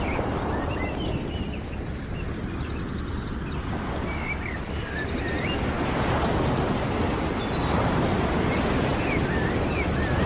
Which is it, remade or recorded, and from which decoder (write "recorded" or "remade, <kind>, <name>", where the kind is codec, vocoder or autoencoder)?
recorded